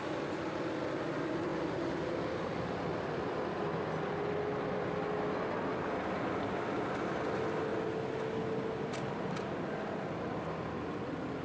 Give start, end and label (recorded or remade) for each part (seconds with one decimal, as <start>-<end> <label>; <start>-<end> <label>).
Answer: 0.0-11.4 recorded